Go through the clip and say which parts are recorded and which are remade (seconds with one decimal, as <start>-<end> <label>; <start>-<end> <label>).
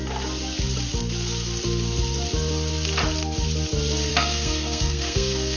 0.0-4.1 recorded; 4.1-5.6 remade